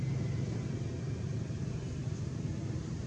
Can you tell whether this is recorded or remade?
recorded